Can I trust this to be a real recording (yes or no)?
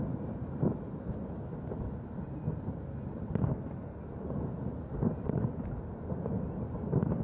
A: yes